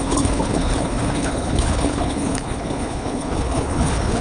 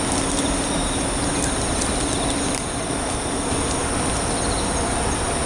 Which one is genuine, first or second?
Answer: second